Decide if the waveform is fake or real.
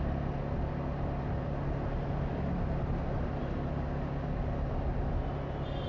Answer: real